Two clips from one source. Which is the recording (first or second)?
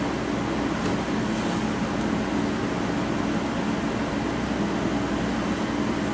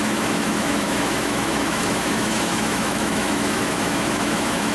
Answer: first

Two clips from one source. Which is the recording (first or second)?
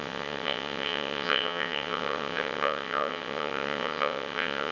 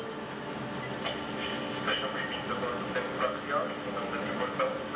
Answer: second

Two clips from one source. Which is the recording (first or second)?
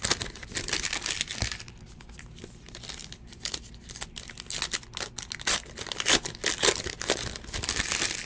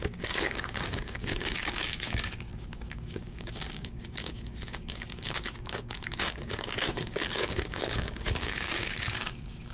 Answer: first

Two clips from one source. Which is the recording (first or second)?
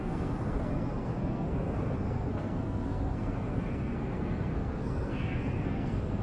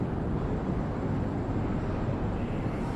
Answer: second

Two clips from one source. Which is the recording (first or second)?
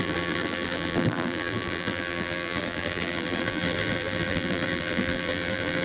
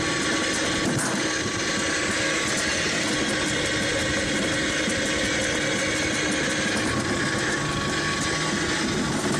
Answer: second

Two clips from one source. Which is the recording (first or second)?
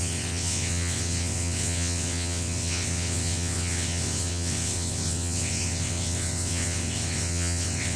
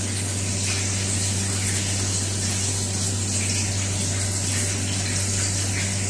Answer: second